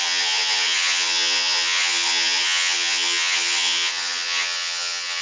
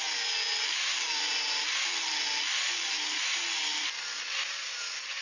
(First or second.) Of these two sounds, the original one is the second